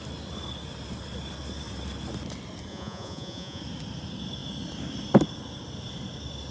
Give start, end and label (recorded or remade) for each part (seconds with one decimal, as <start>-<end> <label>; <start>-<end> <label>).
0.0-2.7 recorded; 2.7-3.6 remade; 3.6-6.5 recorded